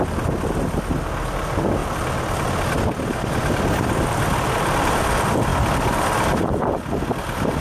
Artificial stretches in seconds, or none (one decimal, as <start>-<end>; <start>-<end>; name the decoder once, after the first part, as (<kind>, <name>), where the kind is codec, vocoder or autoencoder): 1.8-2.8 (vocoder, BigVGAN v2); 5.5-7.6